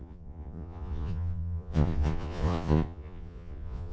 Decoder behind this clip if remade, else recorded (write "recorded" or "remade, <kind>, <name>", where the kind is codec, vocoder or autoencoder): remade, vocoder, Vocos